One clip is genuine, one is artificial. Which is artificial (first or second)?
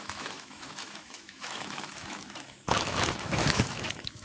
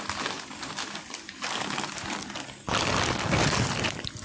first